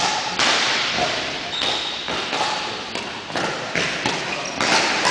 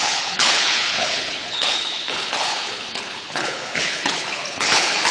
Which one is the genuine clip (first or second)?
first